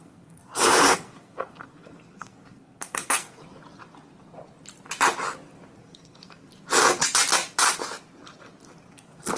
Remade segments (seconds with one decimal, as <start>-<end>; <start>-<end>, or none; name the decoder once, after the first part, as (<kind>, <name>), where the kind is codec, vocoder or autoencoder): 0.0-3.4 (codec, SNAC); 5.8-6.5; 8.9-9.4